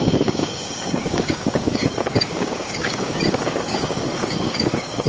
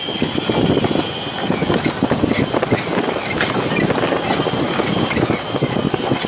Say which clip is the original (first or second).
second